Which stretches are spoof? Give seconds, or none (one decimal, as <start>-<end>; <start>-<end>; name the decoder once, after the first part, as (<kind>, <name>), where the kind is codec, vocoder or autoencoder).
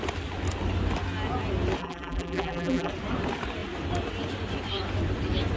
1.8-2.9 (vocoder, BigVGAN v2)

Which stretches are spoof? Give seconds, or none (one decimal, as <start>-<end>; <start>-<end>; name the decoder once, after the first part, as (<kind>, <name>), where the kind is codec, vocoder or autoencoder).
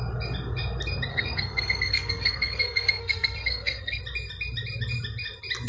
1.1-4.0 (codec, SNAC)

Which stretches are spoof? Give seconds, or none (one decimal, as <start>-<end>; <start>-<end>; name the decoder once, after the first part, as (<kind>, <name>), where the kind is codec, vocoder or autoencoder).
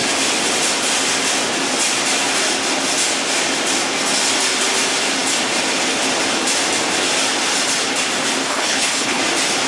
8.5-9.2 (codec, HILCodec)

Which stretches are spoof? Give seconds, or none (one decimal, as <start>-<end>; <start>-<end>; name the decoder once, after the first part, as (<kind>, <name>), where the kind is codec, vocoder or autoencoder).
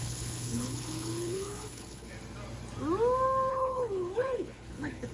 0.0-2.1 (codec, HILCodec); 3.5-5.1